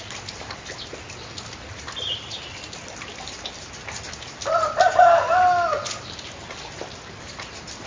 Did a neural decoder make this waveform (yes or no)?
no